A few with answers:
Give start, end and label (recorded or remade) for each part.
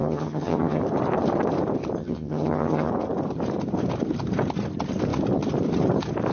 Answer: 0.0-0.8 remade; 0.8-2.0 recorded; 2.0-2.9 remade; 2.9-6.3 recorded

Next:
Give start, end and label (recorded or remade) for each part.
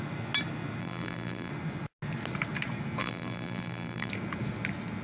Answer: 0.0-0.8 recorded; 0.8-1.5 remade; 1.5-3.0 recorded; 3.0-4.1 remade; 4.1-5.0 recorded